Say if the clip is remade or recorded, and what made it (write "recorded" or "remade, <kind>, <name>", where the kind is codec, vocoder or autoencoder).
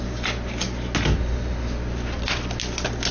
recorded